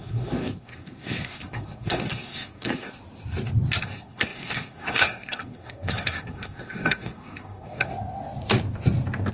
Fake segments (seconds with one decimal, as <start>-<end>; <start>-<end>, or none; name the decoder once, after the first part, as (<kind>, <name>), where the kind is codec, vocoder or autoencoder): 0.0-3.0 (codec, SNAC); 3.8-7.9